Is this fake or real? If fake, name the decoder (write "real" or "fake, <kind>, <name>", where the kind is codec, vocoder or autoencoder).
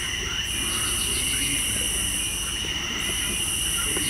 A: real